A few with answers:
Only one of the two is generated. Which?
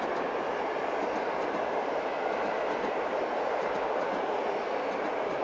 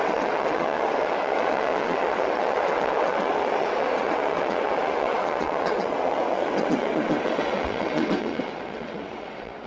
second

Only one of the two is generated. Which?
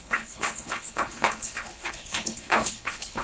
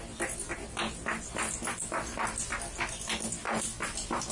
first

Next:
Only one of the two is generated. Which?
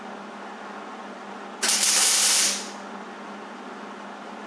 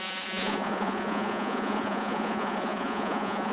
second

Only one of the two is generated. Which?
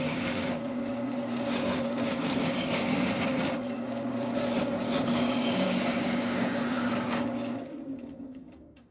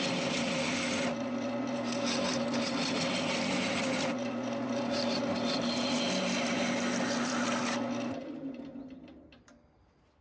first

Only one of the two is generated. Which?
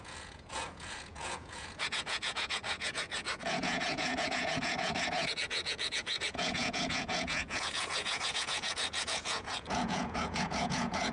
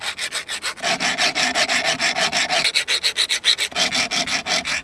first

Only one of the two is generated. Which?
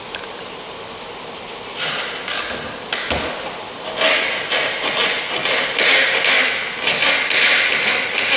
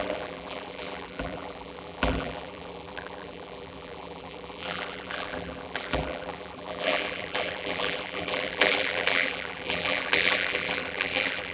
second